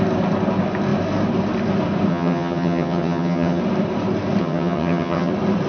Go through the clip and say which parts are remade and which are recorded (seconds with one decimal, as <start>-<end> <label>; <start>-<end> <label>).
0.0-2.1 recorded; 2.1-3.6 remade; 3.6-4.4 recorded; 4.4-5.3 remade; 5.3-5.7 recorded